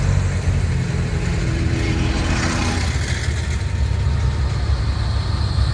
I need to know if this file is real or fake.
real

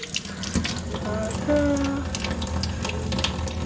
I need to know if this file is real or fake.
real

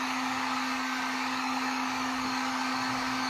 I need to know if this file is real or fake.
fake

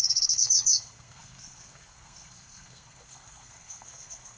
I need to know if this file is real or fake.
fake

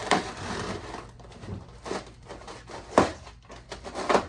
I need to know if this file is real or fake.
real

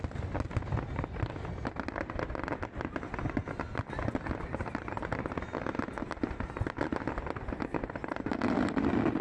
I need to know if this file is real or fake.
real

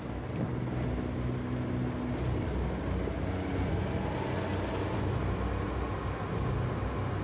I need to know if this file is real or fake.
real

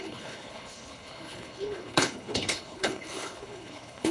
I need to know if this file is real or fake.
fake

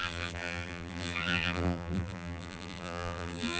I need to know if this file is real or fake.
fake